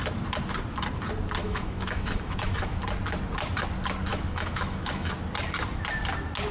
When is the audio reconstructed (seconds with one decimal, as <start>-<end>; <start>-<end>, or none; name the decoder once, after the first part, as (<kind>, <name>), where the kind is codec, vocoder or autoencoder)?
1.4-2.8 (autoencoder, DAC-VAE); 4.1-5.1